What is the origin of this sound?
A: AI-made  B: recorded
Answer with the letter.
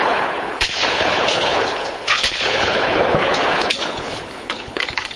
A